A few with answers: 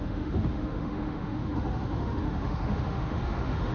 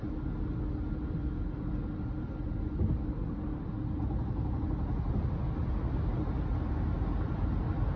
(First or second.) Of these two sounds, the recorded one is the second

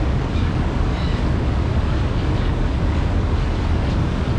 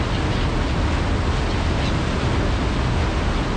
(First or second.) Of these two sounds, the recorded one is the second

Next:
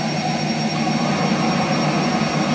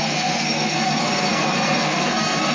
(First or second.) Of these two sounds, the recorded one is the first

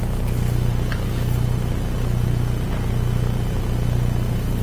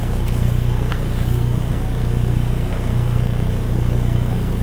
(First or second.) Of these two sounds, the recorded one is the first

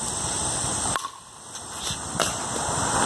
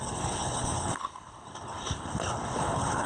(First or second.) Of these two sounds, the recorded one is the first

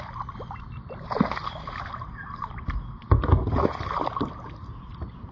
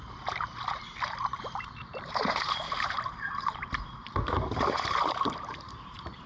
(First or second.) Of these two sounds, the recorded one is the first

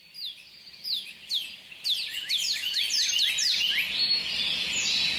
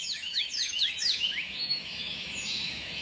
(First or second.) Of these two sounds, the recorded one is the first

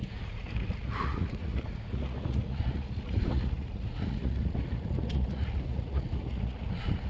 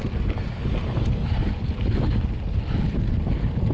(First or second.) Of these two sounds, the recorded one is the second